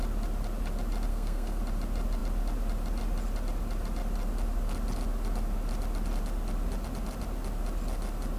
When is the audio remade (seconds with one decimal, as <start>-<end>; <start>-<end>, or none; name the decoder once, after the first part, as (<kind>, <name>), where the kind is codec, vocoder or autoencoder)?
1.1-1.6 (codec, SNAC)